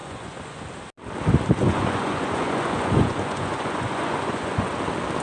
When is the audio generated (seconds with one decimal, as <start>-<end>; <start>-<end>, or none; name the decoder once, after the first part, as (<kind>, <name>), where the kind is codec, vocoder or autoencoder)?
0.0-0.6 (vocoder, Vocos); 1.6-4.7